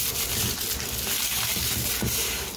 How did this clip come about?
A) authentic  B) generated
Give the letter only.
A